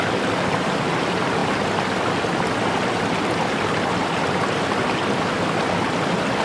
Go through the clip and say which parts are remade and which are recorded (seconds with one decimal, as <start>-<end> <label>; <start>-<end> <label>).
0.0-6.4 recorded